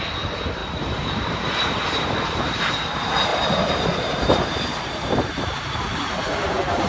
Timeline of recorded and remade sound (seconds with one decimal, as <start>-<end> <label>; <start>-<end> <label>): 0.0-0.6 recorded; 0.6-2.6 remade; 2.6-3.3 recorded; 3.3-6.9 remade